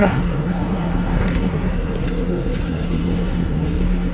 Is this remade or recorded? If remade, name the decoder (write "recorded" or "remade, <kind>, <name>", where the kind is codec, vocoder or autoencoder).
remade, codec, SNAC